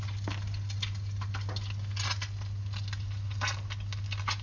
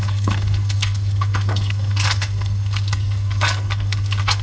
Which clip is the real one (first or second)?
first